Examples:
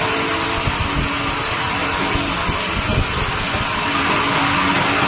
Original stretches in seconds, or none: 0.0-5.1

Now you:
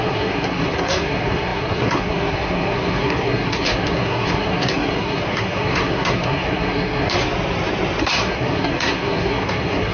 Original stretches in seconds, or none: 7.2-8.0

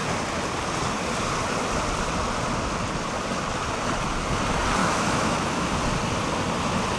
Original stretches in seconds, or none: 0.0-4.8; 5.7-7.0

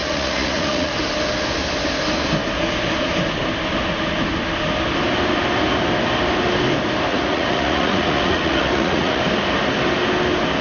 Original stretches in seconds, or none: 0.9-7.1; 9.2-10.6

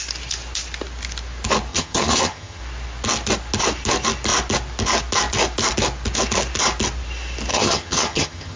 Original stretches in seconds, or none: 0.0-1.7; 2.6-7.5